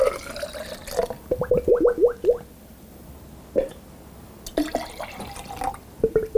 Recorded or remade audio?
recorded